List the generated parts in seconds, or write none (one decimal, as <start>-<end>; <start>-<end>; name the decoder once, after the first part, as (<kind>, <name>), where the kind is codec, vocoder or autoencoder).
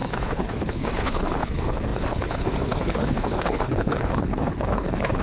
0.0-5.2 (codec, HILCodec)